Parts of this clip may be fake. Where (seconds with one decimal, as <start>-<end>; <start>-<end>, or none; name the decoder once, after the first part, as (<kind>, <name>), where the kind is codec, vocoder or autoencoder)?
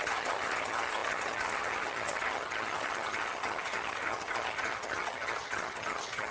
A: 0.0-6.3 (vocoder, HiFi-GAN)